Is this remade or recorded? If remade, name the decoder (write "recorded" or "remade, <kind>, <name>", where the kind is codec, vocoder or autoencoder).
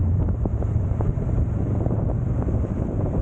remade, vocoder, BigVGAN v2